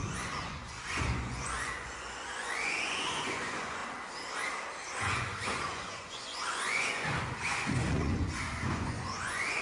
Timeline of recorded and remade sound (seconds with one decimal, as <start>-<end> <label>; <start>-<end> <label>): 0.0-3.8 remade; 3.8-5.0 recorded; 5.0-9.6 remade